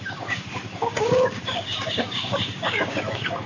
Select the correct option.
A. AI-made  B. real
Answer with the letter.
A